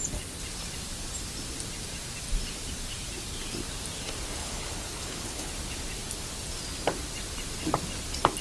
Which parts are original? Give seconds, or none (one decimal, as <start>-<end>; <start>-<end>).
0.0-4.4; 5.5-8.4